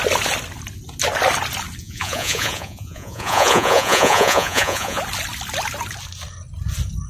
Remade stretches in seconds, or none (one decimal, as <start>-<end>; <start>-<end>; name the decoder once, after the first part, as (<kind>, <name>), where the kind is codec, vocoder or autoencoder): 1.8-5.0 (vocoder, Vocos)